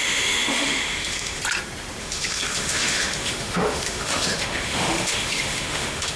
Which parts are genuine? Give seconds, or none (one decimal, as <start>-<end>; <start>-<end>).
1.4-2.0